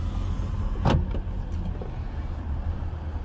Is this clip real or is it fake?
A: real